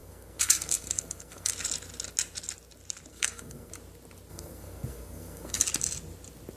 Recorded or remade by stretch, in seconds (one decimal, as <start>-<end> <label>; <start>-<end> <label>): 0.0-1.5 remade; 1.5-3.1 recorded; 3.1-3.7 remade; 3.7-4.3 recorded; 4.3-5.6 remade; 5.6-6.6 recorded